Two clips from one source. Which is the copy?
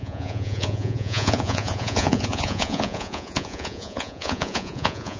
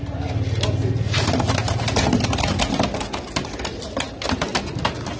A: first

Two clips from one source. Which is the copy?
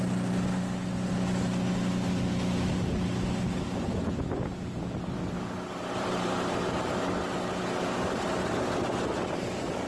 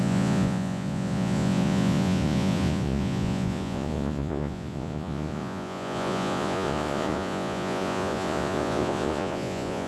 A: second